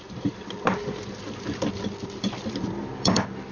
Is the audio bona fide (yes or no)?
no